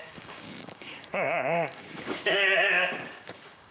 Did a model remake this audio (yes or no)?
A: yes